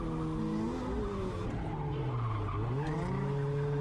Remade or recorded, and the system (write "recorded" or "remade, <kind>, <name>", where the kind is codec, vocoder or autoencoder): recorded